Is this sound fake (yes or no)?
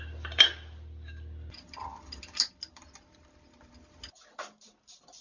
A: no